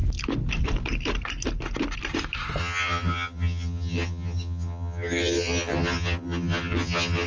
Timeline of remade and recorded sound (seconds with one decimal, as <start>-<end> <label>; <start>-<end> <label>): 0.0-2.6 recorded; 2.6-7.3 remade